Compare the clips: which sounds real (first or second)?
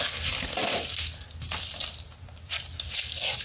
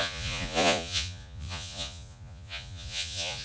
first